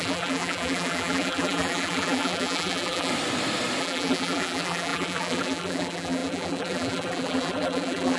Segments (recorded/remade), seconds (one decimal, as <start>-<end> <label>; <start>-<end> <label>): 0.0-3.1 remade; 3.1-3.8 recorded; 3.8-8.2 remade